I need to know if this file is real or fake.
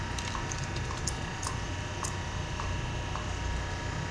fake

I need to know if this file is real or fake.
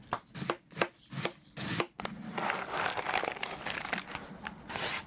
real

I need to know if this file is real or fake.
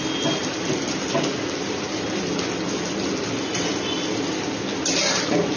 real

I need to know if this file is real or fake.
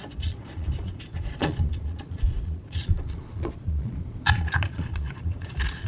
fake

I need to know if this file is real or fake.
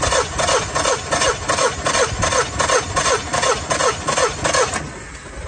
real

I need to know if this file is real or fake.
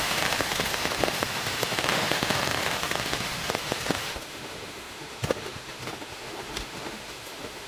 fake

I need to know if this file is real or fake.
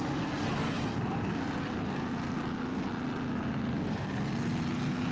real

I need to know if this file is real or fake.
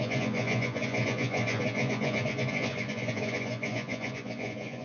fake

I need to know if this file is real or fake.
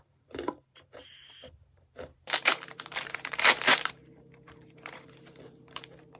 fake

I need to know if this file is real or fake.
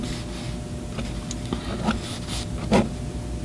real